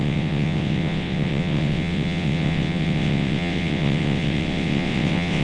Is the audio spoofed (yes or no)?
yes